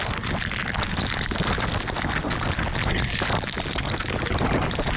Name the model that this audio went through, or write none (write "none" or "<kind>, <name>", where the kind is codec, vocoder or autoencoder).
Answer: none